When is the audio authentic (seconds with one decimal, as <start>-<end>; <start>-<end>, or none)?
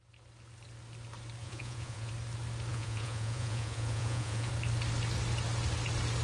0.0-1.4; 2.1-2.7; 4.5-6.2